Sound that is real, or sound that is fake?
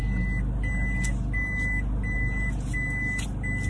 real